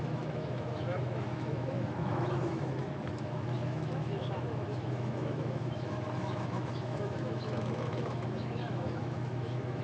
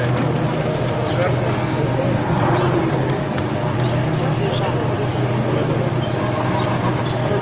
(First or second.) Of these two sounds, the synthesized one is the first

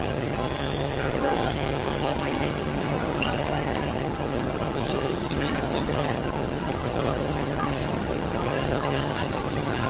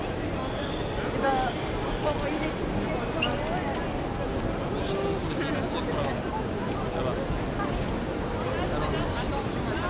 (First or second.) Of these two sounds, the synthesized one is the first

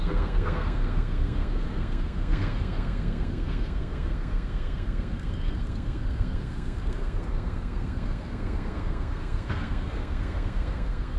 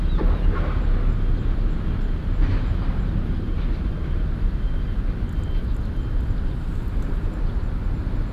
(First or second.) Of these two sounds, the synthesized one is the first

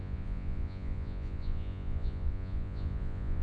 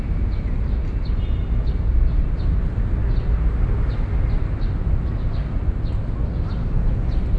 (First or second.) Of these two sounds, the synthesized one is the first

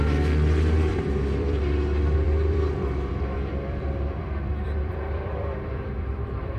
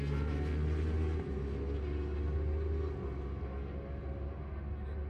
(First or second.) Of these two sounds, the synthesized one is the first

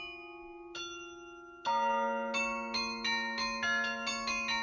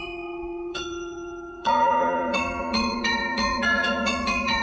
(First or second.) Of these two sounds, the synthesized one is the second